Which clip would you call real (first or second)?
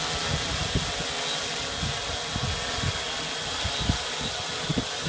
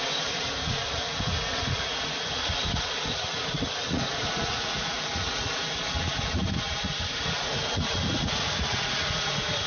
first